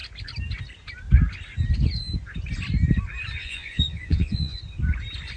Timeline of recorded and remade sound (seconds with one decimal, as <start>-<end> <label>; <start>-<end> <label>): 0.0-3.4 recorded; 3.4-4.6 remade; 4.6-5.4 recorded